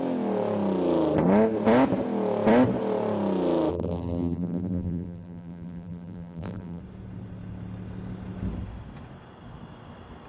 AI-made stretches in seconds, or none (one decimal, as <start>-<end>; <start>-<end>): 3.7-6.8